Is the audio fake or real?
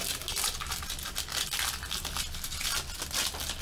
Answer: real